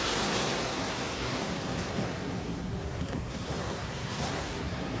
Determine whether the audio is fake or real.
fake